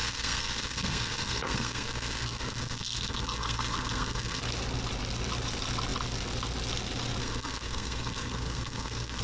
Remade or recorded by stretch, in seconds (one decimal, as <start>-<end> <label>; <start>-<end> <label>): 0.0-4.4 remade; 4.4-7.2 recorded; 7.2-9.2 remade